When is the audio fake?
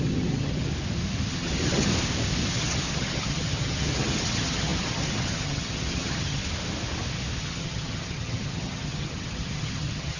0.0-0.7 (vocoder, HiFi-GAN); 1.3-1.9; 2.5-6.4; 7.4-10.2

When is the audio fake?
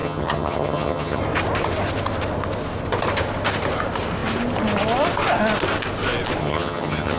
0.0-1.2 (vocoder, HiFi-GAN); 6.4-7.2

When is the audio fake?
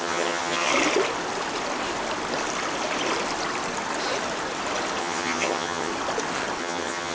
0.0-0.7 (vocoder, HiFi-GAN); 5.0-5.9; 6.6-7.1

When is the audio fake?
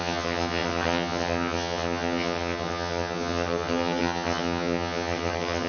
0.0-5.7 (vocoder, HiFi-GAN)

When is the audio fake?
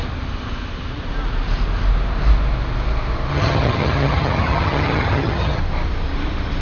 3.3-5.6 (vocoder, HiFi-GAN)